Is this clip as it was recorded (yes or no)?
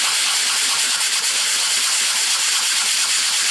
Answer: yes